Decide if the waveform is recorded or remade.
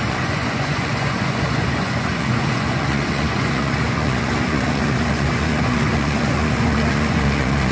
remade